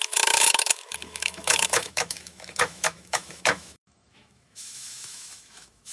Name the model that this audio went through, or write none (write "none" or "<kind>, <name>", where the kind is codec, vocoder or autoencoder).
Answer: autoencoder, DAC-VAE